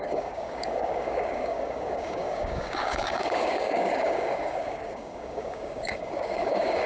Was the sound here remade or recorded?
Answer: remade